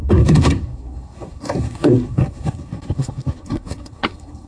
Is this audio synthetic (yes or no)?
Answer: yes